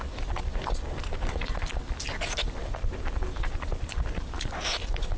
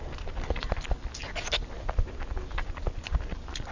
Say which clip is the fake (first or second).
first